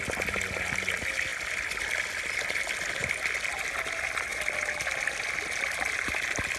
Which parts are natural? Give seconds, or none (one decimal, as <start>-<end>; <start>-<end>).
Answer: 0.0-1.3; 2.2-6.6